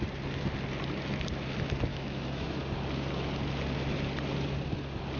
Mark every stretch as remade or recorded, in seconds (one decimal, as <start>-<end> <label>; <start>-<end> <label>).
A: 0.0-1.9 recorded; 1.9-2.6 remade; 2.6-5.2 recorded